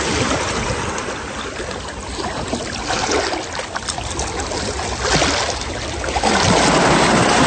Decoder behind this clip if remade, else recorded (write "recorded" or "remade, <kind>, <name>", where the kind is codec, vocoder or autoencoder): recorded